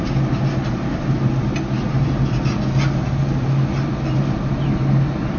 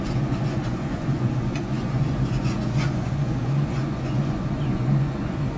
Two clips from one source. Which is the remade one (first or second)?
second